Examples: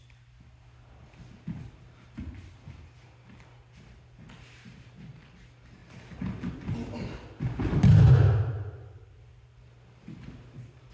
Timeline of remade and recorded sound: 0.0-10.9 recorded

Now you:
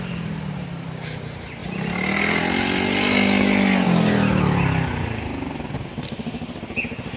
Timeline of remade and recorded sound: 0.0-7.2 recorded

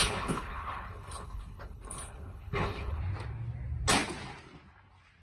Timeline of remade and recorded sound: 0.0-3.0 remade; 3.0-5.2 recorded

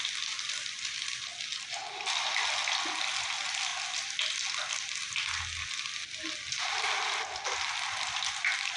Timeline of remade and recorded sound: 0.0-8.8 recorded

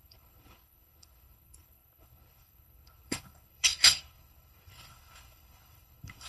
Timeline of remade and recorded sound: 0.0-6.3 remade

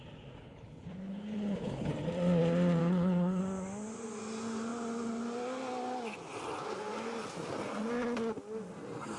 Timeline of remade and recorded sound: 0.0-0.4 recorded; 0.4-1.9 remade; 1.9-2.8 recorded; 2.8-3.4 remade; 3.4-9.2 recorded